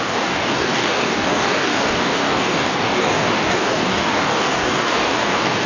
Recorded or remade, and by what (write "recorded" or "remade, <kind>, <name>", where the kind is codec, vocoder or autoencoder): remade, codec, DAC